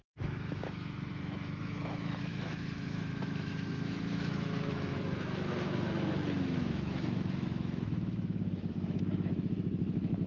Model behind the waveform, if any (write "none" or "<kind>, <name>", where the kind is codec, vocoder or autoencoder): autoencoder, DAC-VAE